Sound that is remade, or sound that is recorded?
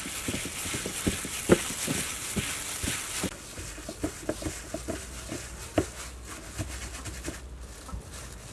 recorded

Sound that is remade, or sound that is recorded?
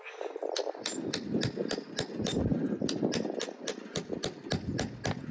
recorded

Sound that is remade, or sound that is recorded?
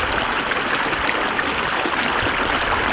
recorded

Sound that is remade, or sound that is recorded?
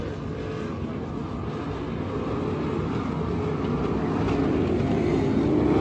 recorded